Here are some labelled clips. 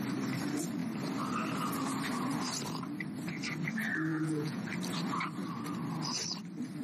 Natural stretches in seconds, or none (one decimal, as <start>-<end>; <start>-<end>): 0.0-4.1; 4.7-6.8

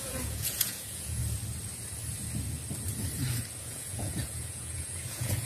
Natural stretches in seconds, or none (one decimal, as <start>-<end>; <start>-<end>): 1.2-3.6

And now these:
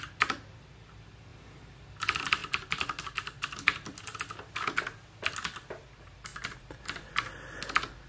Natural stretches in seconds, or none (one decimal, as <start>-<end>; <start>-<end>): 0.0-2.4; 4.0-6.3; 7.1-8.1